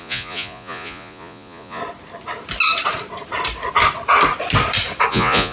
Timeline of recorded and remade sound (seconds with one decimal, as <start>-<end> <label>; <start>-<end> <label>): 0.0-1.8 remade; 1.8-5.1 recorded; 5.1-5.5 remade